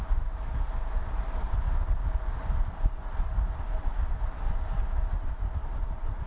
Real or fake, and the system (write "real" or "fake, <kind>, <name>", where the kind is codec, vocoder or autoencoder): real